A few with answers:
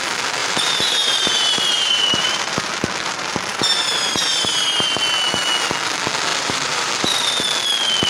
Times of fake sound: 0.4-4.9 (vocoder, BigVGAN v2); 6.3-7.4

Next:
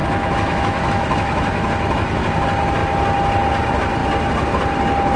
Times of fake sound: 0.0-2.3 (autoencoder, DAC-VAE)

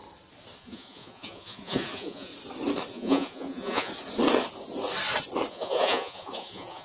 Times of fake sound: 0.6-2.3 (vocoder, Vocos); 2.9-3.9; 5.5-6.8

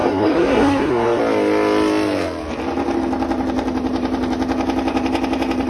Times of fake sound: 0.0-1.2 (codec, SNAC)

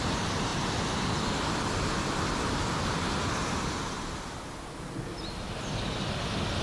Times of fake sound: none

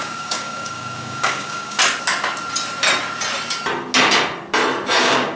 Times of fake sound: 0.0-1.8 (codec, DAC); 5.0-5.4

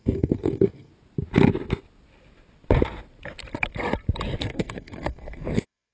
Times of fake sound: 0.0-0.9 (codec, SNAC); 4.4-5.9

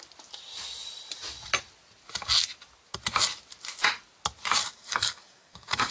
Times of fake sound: 4.6-5.9 (codec, DAC)